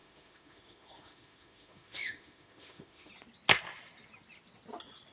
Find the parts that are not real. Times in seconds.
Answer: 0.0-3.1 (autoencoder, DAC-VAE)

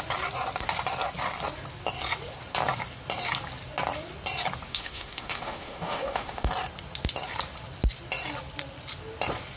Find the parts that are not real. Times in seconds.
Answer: 4.7-6.5 (autoencoder, DAC-VAE)

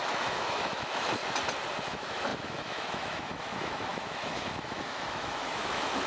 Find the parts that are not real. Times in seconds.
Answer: 0.0-1.2 (autoencoder, DAC-VAE); 1.8-6.1